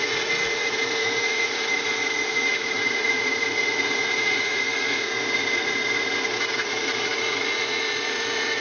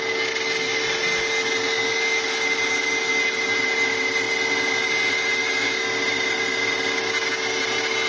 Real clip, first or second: second